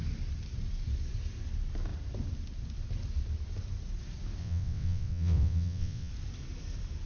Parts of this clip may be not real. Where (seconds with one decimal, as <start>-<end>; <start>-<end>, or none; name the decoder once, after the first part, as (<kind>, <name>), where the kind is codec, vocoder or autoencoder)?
4.4-6.1 (vocoder, WaveNeXt)